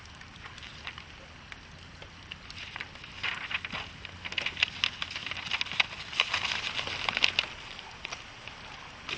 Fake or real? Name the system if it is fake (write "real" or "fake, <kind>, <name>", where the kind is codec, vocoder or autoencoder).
real